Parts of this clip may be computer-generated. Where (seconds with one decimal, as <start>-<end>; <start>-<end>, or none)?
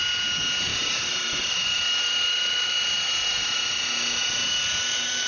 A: 0.7-3.9